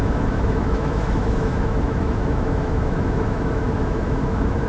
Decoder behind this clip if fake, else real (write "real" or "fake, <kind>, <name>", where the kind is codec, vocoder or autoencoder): fake, autoencoder, DAC-VAE